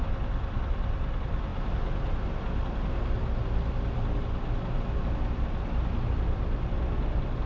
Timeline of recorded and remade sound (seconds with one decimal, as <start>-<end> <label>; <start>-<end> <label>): 0.0-7.5 recorded

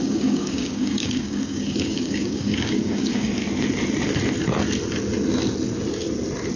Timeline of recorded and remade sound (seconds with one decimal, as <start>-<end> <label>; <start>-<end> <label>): 0.0-3.4 remade; 3.4-6.6 recorded

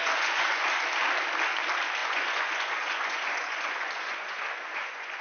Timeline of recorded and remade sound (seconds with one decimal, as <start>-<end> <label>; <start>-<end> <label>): 0.0-0.7 remade; 0.7-2.0 recorded; 2.0-5.2 remade

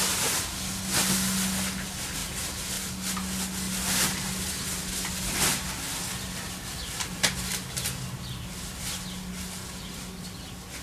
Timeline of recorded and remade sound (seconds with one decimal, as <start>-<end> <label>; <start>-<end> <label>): 0.0-10.8 recorded

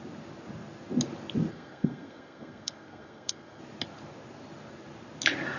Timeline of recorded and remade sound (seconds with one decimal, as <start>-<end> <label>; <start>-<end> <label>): 0.0-1.5 recorded; 1.5-3.6 remade; 3.6-5.6 recorded

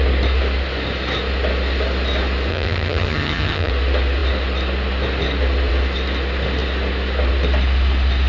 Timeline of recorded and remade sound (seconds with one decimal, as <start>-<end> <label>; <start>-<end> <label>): 0.0-2.5 recorded; 2.5-3.7 remade; 3.7-8.3 recorded